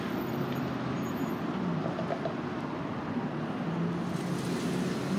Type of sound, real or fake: real